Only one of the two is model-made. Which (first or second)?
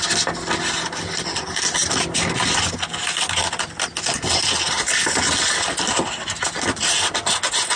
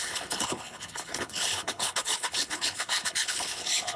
second